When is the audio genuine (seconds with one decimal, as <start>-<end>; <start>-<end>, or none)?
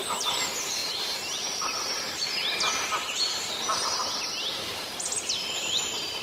0.0-6.2